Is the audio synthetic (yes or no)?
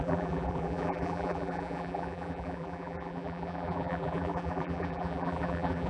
yes